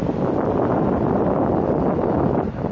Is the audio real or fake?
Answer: real